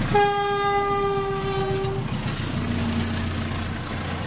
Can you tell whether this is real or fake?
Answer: real